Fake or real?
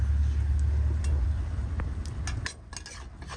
real